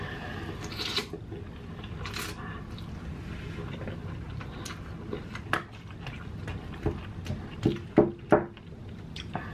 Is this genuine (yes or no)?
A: yes